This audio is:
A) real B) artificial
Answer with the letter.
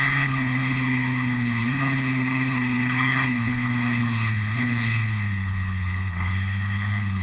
B